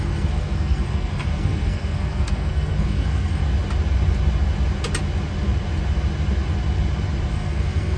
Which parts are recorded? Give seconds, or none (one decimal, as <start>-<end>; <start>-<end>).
3.4-7.3